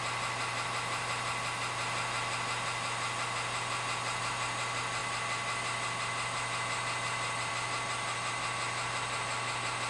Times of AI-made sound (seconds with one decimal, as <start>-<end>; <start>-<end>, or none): none

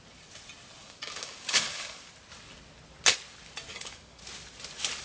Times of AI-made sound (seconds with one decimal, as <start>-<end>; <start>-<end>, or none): 0.8-2.1; 3.7-4.2

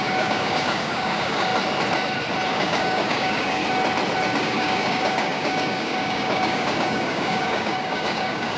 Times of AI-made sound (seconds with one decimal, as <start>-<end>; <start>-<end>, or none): 0.0-1.5; 2.5-3.6; 4.4-8.6

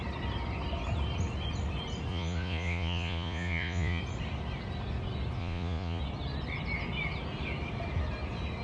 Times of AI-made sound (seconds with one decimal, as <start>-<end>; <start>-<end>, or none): 2.1-4.0; 5.4-6.0

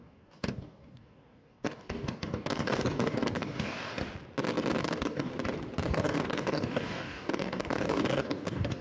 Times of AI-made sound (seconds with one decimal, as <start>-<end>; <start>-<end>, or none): 0.0-4.0; 4.8-5.3; 5.9-8.8

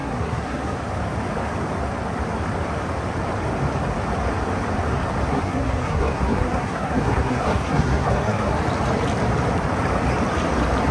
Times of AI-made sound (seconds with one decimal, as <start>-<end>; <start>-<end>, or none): 0.0-0.8; 5.3-8.6

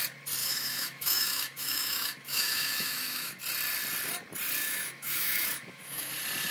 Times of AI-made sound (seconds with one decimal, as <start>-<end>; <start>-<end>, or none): 0.4-3.4; 4.6-6.1